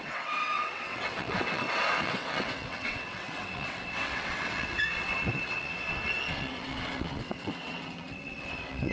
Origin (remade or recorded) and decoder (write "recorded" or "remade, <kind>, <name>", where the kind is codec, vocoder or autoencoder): remade, vocoder, WaveNeXt